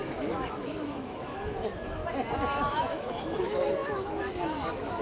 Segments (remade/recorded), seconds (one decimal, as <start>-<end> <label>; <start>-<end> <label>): 0.0-2.0 remade; 2.0-2.6 recorded; 2.6-5.0 remade